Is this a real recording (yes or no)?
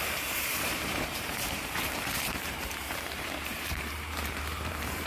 no